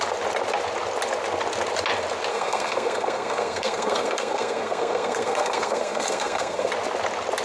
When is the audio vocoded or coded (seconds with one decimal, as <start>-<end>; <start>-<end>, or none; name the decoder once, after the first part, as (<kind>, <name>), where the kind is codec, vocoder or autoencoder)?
2.3-6.7 (codec, SNAC)